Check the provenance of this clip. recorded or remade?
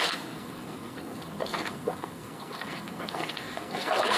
remade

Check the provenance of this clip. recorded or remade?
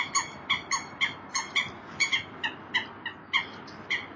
recorded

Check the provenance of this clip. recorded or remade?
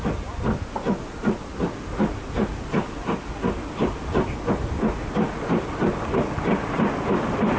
recorded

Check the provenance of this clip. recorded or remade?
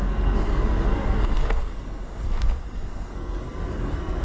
remade